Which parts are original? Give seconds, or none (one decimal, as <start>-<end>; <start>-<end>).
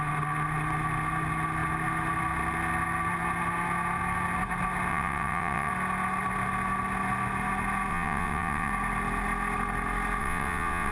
0.0-4.9; 5.7-7.9; 8.7-10.2